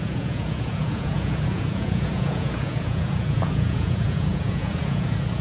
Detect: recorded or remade remade